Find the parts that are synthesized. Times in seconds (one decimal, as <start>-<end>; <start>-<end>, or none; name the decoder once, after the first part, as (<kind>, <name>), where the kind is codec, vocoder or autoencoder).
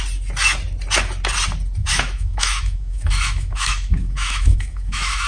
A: 1.8-5.3 (autoencoder, DAC-VAE)